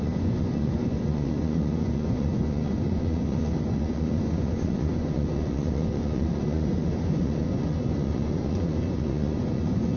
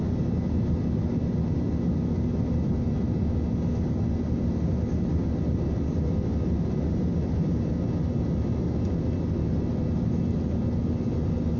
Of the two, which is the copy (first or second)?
first